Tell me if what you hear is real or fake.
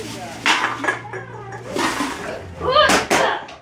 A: real